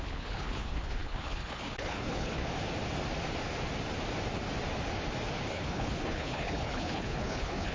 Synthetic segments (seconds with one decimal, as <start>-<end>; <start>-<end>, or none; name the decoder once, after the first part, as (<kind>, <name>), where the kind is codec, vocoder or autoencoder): 0.0-2.4 (codec, HILCodec); 5.5-7.7